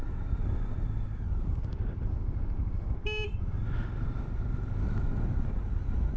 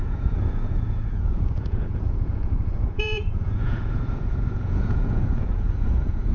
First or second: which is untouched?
first